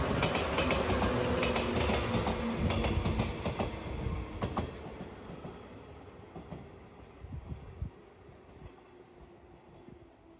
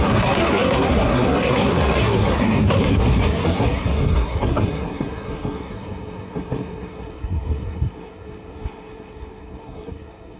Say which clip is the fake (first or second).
second